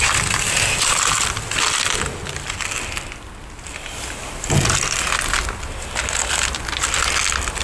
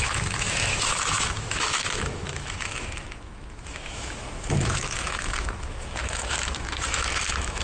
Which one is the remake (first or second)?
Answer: second